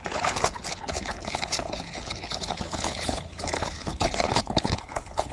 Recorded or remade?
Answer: remade